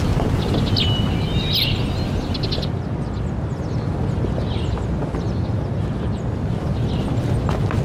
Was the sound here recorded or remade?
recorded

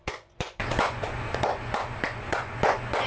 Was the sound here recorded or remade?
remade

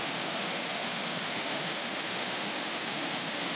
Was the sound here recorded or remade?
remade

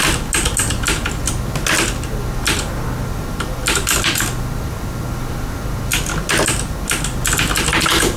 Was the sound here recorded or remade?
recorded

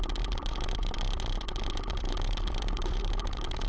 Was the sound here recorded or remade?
remade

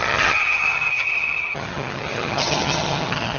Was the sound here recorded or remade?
remade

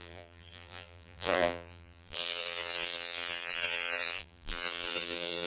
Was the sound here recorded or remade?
remade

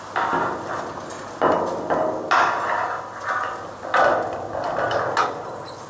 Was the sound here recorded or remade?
recorded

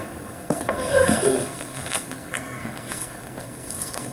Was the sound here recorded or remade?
remade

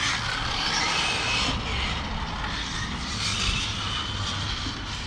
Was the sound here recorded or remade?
recorded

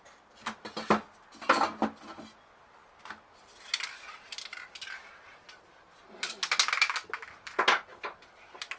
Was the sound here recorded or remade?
recorded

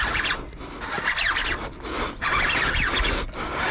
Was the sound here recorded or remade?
recorded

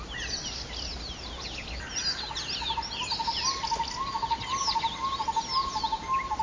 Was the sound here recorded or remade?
recorded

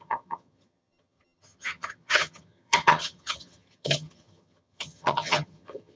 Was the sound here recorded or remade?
remade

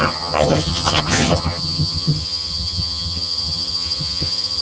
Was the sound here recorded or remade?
remade